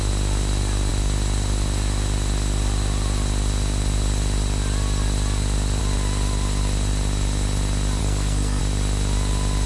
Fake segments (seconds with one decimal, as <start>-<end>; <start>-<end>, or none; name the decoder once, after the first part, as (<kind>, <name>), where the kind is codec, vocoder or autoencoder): 8.0-8.6 (codec, SNAC)